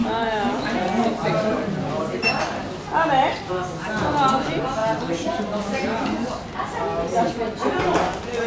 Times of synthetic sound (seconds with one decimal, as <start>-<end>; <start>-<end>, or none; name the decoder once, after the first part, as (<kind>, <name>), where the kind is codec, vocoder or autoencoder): none

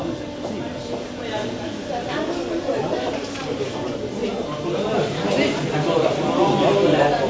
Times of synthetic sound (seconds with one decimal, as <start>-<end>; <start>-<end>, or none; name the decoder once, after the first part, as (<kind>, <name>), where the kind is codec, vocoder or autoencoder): none

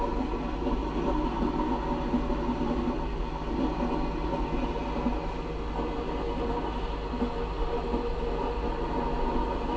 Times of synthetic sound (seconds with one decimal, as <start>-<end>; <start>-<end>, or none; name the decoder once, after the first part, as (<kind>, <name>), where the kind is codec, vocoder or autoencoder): none

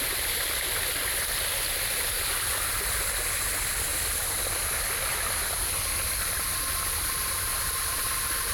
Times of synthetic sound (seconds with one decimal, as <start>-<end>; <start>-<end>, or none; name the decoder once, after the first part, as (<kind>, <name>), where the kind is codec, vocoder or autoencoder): none

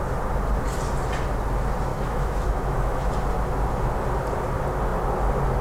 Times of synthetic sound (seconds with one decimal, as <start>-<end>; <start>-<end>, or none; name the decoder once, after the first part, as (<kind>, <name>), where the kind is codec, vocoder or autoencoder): 1.9-3.1 (autoencoder, DAC-VAE)

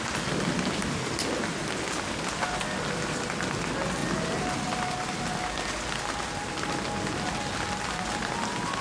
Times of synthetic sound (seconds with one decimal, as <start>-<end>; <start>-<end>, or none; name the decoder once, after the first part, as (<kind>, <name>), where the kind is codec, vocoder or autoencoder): none